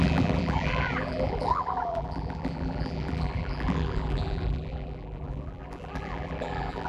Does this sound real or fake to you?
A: fake